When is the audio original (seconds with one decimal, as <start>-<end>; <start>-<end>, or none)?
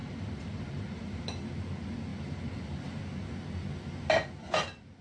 1.2-2.1; 3.0-5.0